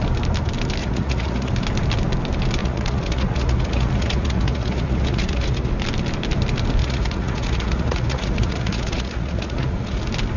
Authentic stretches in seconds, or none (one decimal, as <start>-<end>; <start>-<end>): 0.0-0.8; 1.5-2.6; 5.7-6.8; 10.0-10.4